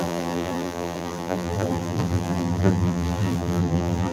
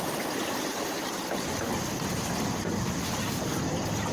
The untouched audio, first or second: second